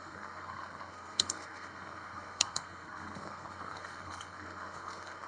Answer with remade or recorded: remade